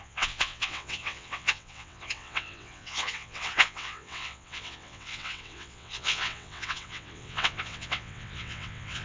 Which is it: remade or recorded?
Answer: remade